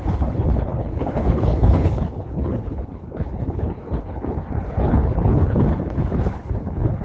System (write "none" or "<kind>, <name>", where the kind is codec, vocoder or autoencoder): codec, HILCodec